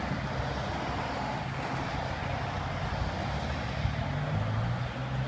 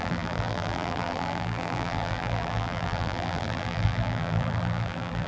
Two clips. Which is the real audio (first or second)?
first